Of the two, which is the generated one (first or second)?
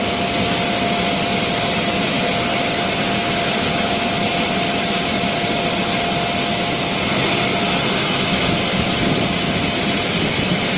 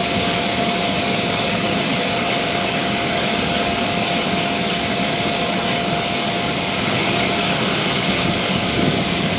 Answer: second